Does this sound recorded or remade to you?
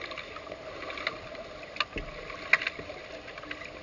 recorded